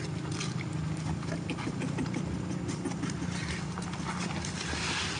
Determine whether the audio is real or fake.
real